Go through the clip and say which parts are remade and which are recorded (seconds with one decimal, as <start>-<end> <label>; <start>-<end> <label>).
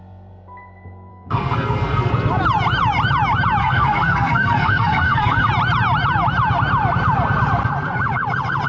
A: 0.0-1.1 recorded; 1.1-2.1 remade; 2.1-3.6 recorded; 3.6-5.5 remade; 5.5-8.7 recorded